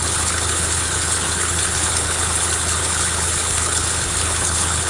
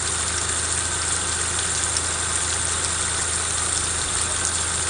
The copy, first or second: first